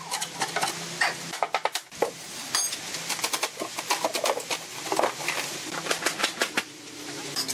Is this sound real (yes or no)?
yes